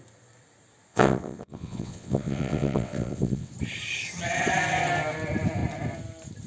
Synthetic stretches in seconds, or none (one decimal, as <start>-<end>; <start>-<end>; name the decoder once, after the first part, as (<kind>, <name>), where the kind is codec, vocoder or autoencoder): 0.9-3.5 (vocoder, WaveNeXt)